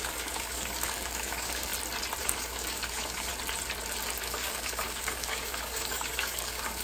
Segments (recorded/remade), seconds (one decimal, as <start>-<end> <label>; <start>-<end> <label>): 0.0-1.7 remade; 1.7-2.2 recorded; 2.2-3.3 remade; 3.3-4.2 recorded; 4.2-6.8 remade